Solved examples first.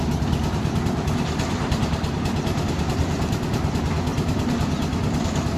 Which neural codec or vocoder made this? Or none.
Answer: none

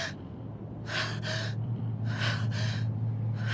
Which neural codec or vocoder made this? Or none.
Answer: none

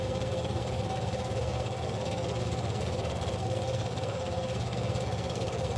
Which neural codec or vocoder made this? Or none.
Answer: codec, SNAC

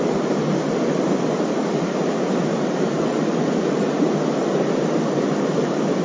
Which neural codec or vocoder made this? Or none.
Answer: none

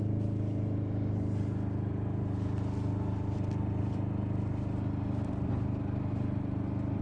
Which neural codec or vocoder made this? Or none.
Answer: none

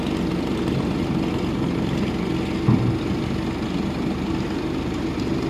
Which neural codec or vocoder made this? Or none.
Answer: none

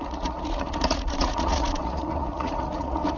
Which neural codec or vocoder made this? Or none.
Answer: vocoder, Vocos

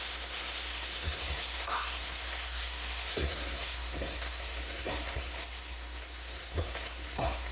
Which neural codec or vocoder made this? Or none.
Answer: codec, SNAC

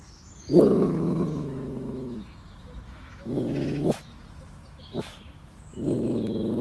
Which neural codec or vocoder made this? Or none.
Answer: autoencoder, DAC-VAE